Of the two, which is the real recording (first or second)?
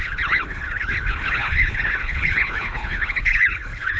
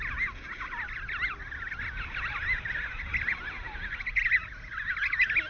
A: second